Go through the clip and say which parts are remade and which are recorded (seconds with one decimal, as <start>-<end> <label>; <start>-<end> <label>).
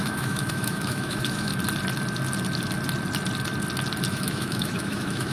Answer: 0.0-1.5 remade; 1.5-4.1 recorded; 4.1-5.3 remade